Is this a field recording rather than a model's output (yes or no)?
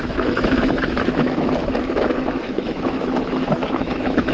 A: no